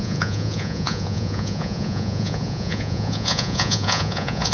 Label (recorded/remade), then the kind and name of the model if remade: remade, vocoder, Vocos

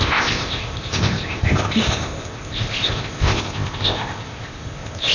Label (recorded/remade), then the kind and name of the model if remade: remade, codec, ZipCodec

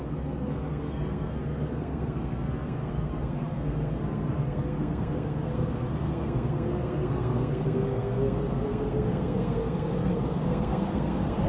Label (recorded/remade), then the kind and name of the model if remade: remade, codec, SNAC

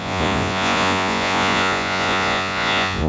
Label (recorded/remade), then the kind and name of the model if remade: remade, vocoder, Vocos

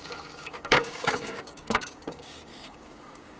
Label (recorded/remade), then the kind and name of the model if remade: remade, codec, DAC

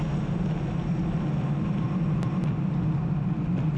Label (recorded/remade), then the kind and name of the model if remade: recorded